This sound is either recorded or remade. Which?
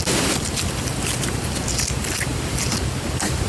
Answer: recorded